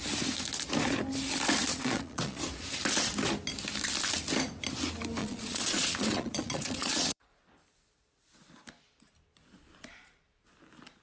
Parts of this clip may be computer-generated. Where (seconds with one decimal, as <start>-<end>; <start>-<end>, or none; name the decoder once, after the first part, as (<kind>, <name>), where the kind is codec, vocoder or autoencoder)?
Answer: 1.7-2.4 (vocoder, Vocos); 5.2-7.3